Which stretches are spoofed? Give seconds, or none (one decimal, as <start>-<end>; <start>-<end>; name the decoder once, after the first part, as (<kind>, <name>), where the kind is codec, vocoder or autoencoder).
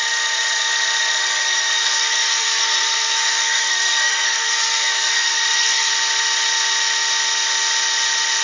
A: 1.2-5.9 (codec, SNAC)